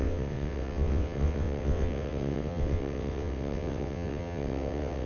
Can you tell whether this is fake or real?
fake